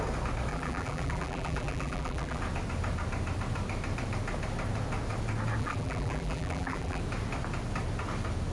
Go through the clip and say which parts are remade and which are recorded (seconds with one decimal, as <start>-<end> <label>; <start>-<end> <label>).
0.0-0.5 recorded; 0.5-2.4 remade; 2.4-5.6 recorded; 5.6-7.0 remade; 7.0-8.5 recorded